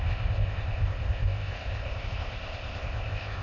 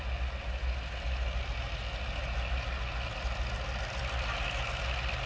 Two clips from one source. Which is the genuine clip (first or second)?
second